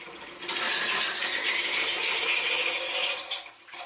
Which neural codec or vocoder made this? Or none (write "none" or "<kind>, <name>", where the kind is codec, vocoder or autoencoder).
none